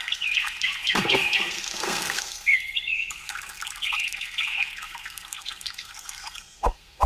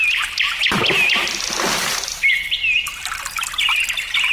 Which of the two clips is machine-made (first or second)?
first